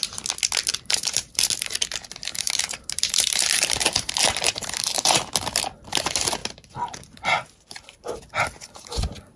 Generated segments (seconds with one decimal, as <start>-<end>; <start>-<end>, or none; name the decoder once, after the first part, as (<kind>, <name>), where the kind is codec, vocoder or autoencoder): 0.7-1.5 (vocoder, BigVGAN v2); 2.3-5.6; 6.4-7.7